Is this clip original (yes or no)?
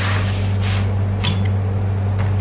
yes